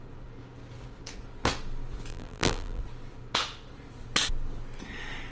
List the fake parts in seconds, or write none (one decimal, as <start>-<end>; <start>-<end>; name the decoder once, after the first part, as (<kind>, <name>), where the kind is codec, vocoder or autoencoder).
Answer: 2.1-2.8 (vocoder, BigVGAN v2)